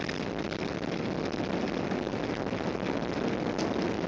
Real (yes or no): yes